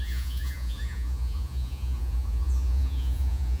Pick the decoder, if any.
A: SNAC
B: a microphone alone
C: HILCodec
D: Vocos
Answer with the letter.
D